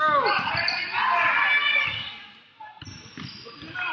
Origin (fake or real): real